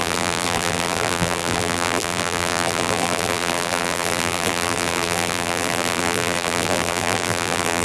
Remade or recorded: remade